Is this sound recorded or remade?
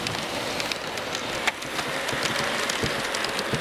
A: recorded